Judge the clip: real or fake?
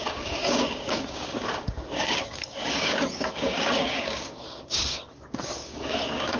fake